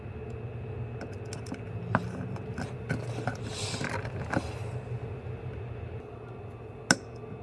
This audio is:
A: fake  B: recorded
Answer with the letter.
B